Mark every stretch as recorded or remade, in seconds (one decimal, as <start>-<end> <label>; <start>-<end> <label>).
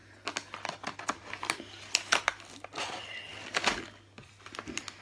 0.0-5.0 recorded